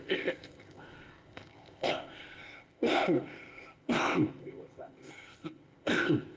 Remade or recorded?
remade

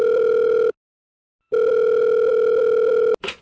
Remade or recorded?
recorded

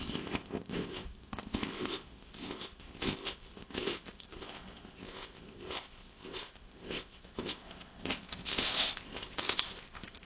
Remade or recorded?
remade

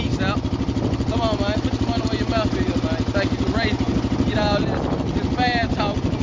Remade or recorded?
recorded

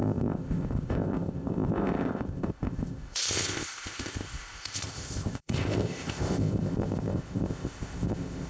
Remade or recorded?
remade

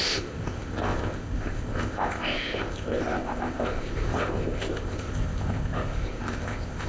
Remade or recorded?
remade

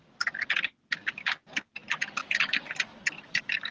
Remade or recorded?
recorded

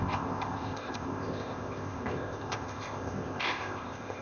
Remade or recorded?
remade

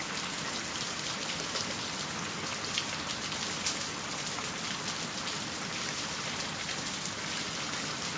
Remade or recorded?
recorded